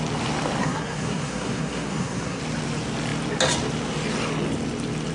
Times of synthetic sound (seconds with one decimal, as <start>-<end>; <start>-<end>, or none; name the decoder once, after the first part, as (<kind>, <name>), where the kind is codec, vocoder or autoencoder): 0.6-2.4 (codec, SNAC)